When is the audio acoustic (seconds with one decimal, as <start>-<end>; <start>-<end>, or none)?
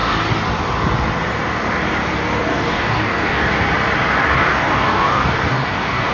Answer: 0.0-2.5; 3.5-4.5